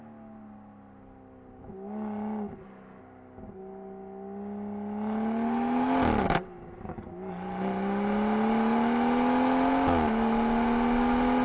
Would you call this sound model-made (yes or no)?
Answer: no